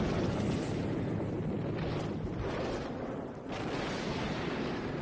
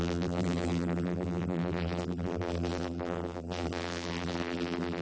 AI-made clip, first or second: second